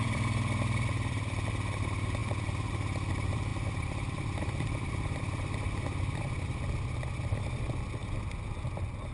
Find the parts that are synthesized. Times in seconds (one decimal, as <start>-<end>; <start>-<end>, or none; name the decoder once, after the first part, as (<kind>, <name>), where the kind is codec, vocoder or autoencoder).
0.0-8.0 (vocoder, BigVGAN v2)